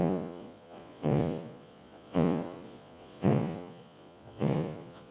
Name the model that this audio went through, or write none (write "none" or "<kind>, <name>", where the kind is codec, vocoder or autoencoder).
vocoder, Vocos